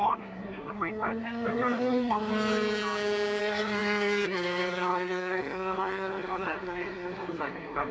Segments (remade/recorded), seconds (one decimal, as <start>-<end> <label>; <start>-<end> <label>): 0.0-2.3 remade; 2.3-3.4 recorded; 3.4-7.9 remade

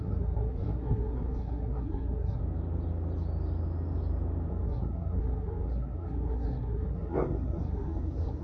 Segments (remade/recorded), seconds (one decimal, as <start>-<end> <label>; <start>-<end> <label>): 0.0-2.4 remade; 2.4-4.5 recorded; 4.5-8.4 remade

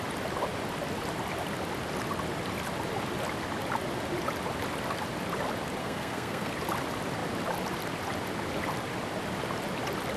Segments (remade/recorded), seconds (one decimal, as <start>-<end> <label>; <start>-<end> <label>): 0.0-5.8 recorded; 5.8-6.5 remade; 6.5-10.2 recorded

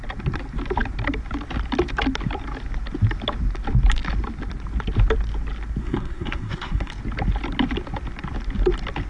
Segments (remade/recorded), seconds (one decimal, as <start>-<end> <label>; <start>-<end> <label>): 0.0-5.8 recorded; 5.8-6.9 remade; 6.9-9.1 recorded

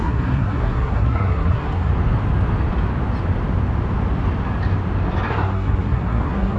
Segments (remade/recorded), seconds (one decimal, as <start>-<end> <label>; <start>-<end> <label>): 0.0-1.9 remade; 1.9-5.3 recorded; 5.3-6.6 remade

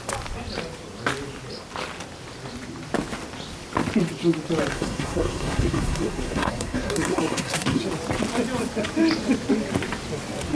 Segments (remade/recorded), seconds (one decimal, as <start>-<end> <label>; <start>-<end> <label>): 0.0-4.7 recorded; 4.7-7.8 remade; 7.8-10.5 recorded

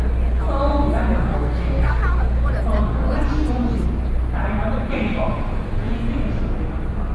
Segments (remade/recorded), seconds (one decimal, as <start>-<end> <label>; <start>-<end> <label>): 0.0-1.3 recorded; 1.3-2.0 remade; 2.0-7.1 recorded